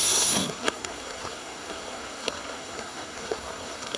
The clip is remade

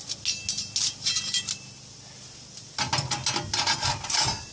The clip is recorded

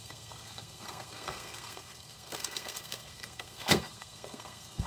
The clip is remade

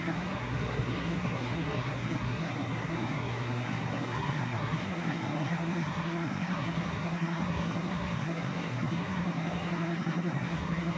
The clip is remade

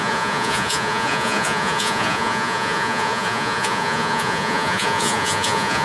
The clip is remade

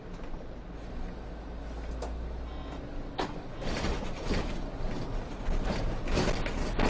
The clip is recorded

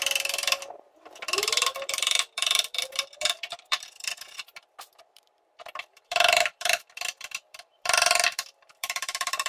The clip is remade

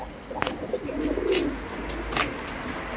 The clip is recorded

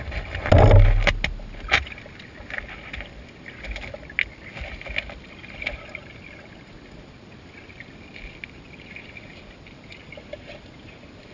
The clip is recorded